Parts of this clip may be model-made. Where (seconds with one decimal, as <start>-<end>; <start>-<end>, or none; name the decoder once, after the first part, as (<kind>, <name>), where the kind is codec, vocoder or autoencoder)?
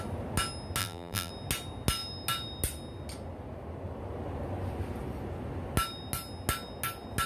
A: 0.8-1.3 (vocoder, BigVGAN v2)